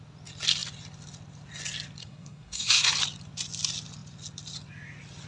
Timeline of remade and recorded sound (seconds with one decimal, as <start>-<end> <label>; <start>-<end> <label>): 0.0-2.0 recorded; 2.0-2.9 remade; 2.9-5.3 recorded